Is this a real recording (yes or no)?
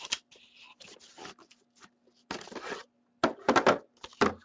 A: yes